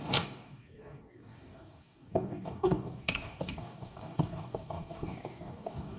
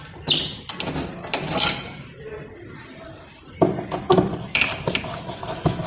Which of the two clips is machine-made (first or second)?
first